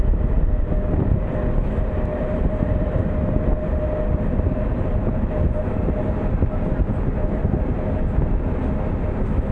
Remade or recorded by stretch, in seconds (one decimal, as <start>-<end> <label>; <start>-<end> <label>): 0.0-2.1 recorded; 2.1-3.1 remade; 3.1-9.5 recorded